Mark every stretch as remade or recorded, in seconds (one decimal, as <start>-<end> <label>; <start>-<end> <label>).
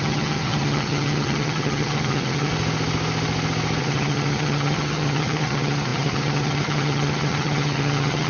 0.0-2.5 remade; 2.5-3.8 recorded; 3.8-8.3 remade